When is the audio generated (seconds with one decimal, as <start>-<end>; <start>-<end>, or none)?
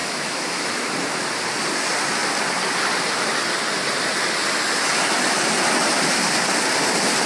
0.0-0.8